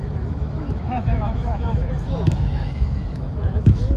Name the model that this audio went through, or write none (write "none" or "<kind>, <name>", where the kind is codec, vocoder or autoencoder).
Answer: autoencoder, DAC-VAE